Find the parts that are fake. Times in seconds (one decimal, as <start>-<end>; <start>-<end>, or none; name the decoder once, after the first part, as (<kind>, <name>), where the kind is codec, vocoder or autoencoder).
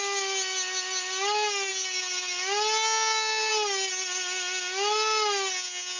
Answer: none